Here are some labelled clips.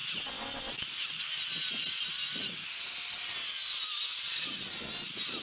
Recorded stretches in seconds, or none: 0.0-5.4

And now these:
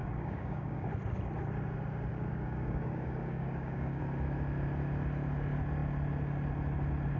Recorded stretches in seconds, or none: 0.9-2.1; 4.0-7.2